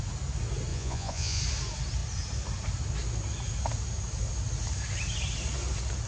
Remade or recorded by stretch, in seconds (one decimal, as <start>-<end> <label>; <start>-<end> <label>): 0.0-0.7 recorded; 0.7-1.4 remade; 1.4-6.1 recorded

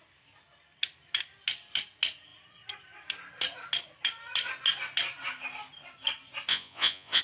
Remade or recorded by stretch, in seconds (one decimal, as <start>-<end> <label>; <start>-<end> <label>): 0.0-6.5 recorded; 6.5-7.2 remade

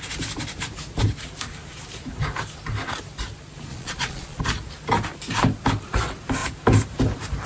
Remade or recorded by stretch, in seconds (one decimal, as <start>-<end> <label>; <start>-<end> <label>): 0.0-3.7 recorded; 3.7-4.4 remade; 4.4-7.5 recorded

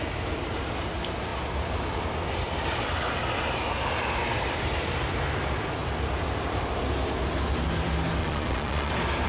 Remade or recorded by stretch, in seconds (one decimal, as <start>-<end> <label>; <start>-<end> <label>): 0.0-8.2 recorded; 8.2-8.9 remade; 8.9-9.3 recorded

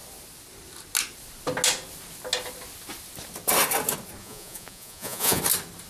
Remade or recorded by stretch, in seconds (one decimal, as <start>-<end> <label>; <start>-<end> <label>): 0.0-4.2 recorded; 4.2-5.4 remade; 5.4-5.9 recorded

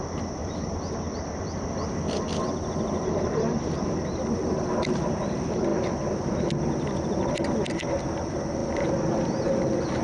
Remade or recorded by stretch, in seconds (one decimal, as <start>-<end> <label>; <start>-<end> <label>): 0.0-10.0 recorded

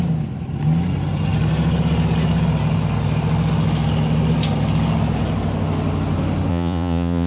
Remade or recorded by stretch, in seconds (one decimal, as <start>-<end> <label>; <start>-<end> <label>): 0.0-6.5 recorded; 6.5-7.3 remade